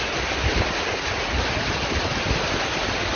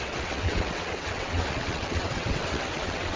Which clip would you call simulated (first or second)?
second